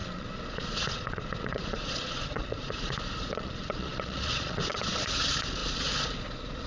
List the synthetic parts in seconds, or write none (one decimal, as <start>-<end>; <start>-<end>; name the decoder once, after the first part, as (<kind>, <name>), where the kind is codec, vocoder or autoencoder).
0.0-6.7 (vocoder, Vocos)